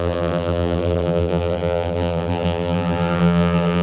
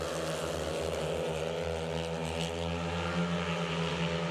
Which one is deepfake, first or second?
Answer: first